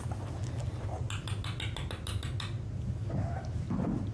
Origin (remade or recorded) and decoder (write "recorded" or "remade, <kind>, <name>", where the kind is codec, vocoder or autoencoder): recorded